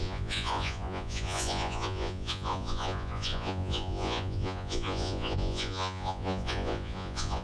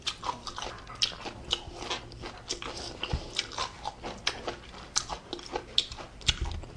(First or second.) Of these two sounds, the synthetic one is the first